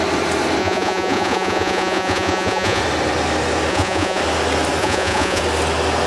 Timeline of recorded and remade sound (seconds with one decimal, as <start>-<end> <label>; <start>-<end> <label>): 0.0-0.6 recorded; 0.6-2.8 remade; 2.8-3.7 recorded; 3.7-4.2 remade; 4.2-4.8 recorded; 4.8-5.4 remade; 5.4-6.1 recorded